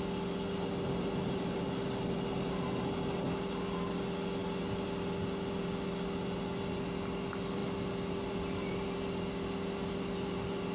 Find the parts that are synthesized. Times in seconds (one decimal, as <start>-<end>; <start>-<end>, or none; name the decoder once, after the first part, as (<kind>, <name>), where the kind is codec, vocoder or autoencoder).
none

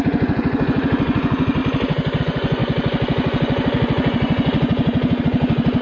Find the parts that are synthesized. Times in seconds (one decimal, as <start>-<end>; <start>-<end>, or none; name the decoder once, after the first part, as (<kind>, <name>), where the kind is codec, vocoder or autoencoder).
0.0-1.6 (vocoder, Vocos); 2.2-5.8

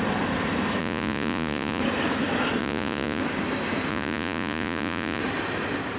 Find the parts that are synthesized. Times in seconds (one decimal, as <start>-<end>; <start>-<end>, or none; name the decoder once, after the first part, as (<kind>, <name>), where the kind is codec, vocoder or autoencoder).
0.8-1.8 (vocoder, Vocos); 2.6-3.2; 3.9-5.2

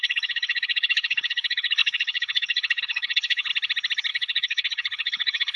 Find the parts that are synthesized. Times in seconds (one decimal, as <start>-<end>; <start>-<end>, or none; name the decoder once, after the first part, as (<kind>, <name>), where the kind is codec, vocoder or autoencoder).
0.0-3.5 (codec, HILCodec); 4.1-5.6